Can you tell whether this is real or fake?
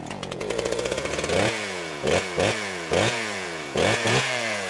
fake